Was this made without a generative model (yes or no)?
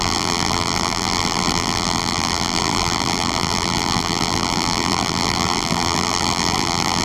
no